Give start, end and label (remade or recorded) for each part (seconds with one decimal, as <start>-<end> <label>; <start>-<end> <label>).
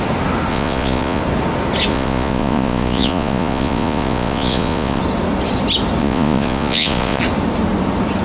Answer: 0.0-0.5 recorded; 0.5-1.2 remade; 1.2-1.9 recorded; 1.9-5.0 remade; 5.0-6.0 recorded; 6.0-7.2 remade; 7.2-8.2 recorded